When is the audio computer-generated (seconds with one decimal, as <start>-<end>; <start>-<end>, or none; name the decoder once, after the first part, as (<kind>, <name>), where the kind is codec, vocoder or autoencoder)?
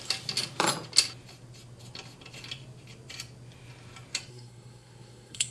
4.3-5.5 (codec, SNAC)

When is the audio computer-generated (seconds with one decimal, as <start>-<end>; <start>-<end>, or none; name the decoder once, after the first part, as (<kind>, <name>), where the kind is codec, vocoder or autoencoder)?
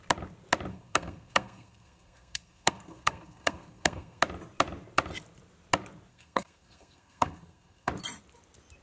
0.7-4.2 (codec, SNAC); 6.1-7.9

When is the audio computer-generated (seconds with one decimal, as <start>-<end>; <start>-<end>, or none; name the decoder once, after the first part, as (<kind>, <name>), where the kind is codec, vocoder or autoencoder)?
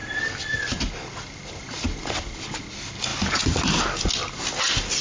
none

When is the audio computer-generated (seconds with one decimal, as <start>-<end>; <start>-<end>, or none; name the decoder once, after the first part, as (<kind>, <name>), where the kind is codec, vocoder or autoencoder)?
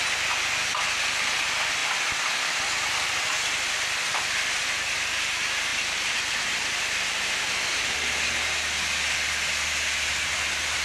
none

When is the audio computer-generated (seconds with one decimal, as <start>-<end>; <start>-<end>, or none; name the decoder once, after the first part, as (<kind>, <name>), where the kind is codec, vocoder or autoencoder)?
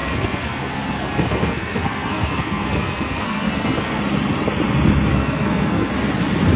0.0-4.0 (codec, SNAC); 5.1-5.9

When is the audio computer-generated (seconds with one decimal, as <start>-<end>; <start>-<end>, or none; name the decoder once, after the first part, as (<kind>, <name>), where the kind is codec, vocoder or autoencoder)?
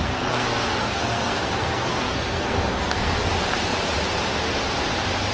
0.0-3.2 (codec, SNAC)